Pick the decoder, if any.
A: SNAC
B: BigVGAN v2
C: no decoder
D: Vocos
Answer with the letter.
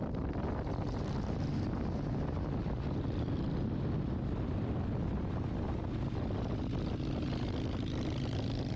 C